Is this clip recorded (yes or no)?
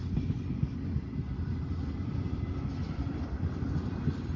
yes